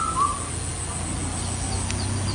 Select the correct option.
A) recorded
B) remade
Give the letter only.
A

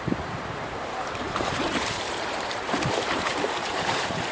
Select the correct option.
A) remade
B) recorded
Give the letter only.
A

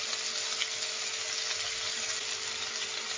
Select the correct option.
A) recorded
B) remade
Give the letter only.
A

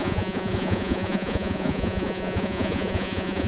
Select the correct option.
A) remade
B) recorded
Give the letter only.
A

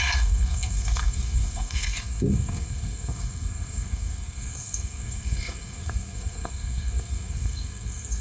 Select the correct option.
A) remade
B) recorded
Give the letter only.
A